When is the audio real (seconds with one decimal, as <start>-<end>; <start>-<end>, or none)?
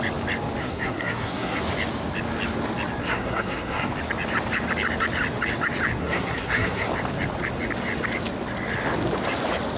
0.0-0.6; 1.6-3.0; 3.9-6.0; 6.9-9.8